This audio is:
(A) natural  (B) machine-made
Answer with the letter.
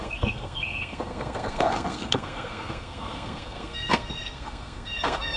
B